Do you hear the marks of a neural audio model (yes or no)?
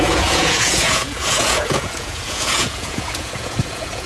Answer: yes